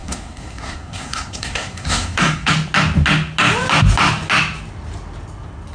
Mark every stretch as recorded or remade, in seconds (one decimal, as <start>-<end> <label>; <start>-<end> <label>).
0.0-2.5 remade; 2.5-5.7 recorded